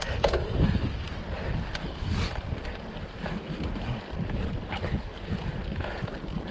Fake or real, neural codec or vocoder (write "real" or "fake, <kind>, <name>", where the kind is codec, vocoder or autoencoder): real